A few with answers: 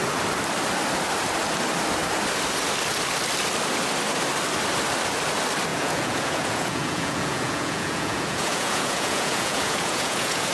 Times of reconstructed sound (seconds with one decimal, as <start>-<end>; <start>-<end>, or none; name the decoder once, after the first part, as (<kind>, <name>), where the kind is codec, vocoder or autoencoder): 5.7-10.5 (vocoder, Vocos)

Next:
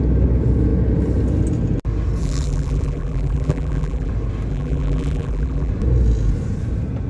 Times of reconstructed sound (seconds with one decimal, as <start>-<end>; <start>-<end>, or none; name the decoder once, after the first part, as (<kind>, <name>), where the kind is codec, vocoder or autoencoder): 2.2-4.1 (vocoder, BigVGAN v2); 4.5-5.7

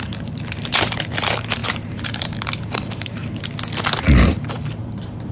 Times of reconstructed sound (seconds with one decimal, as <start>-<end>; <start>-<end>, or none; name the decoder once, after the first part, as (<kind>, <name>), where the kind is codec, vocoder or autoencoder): 0.0-3.2 (vocoder, BigVGAN v2); 4.0-5.3

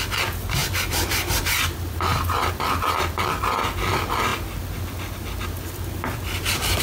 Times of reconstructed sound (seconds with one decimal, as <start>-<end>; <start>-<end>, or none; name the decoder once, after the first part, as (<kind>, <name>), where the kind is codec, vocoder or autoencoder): none

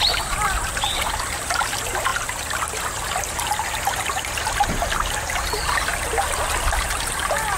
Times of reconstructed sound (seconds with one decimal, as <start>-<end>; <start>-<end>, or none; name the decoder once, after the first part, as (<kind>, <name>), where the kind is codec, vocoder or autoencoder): none

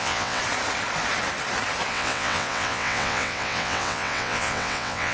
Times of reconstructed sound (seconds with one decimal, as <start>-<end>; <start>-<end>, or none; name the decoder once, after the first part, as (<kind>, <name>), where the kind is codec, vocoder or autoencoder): 0.0-0.4 (vocoder, WaveNeXt); 1.9-5.1

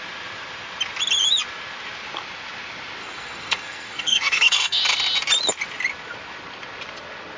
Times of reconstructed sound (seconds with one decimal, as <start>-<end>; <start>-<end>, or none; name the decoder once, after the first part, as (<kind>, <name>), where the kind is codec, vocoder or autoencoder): 3.0-4.8 (codec, SNAC)